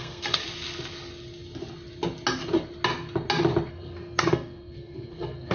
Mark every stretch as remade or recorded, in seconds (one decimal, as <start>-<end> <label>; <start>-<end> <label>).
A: 0.0-0.4 remade; 0.4-3.7 recorded; 3.7-5.5 remade